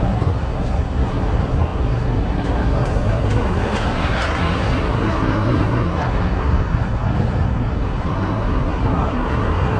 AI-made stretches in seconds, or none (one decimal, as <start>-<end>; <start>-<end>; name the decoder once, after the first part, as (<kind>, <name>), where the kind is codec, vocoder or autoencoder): 0.0-9.8 (codec, SNAC)